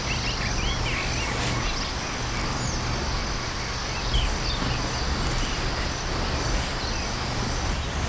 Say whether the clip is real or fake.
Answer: real